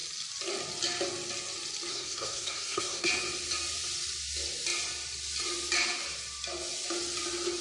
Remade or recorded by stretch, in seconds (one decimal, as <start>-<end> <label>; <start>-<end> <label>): 0.0-1.9 recorded; 1.9-3.1 remade; 3.1-7.6 recorded